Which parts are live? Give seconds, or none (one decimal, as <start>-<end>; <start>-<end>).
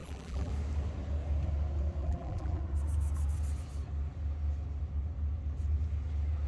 0.5-2.0; 2.6-6.5